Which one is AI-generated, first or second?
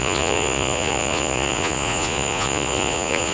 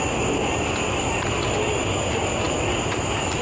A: first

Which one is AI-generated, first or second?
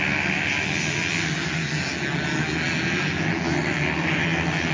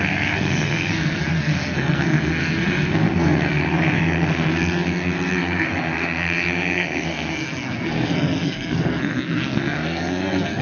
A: second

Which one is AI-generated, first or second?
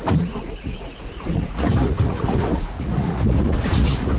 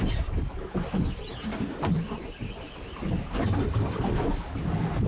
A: first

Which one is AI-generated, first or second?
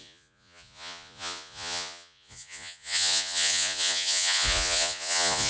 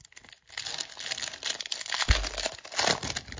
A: first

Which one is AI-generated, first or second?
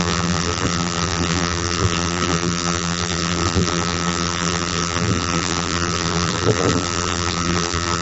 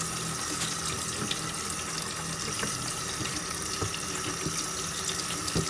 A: first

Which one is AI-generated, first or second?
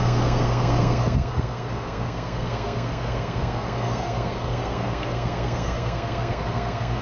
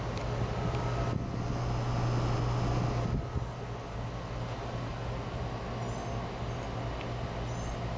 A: first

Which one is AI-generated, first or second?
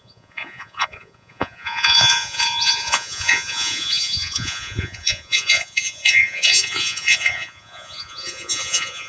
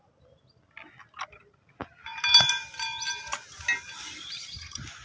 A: first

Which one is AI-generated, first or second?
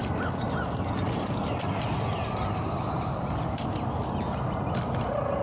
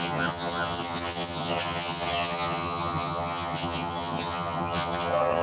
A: second